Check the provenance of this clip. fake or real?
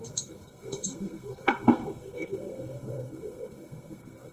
fake